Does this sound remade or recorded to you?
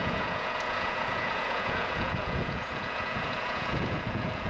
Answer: remade